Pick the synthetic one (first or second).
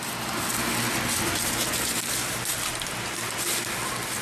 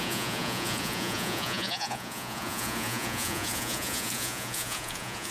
second